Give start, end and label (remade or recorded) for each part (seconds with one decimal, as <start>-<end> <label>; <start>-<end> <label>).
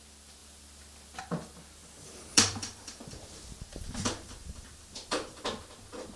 0.0-1.8 recorded; 1.8-3.0 remade; 3.0-3.7 recorded; 3.7-5.4 remade; 5.4-6.2 recorded